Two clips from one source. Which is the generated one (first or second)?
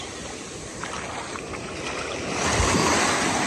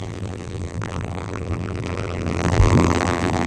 second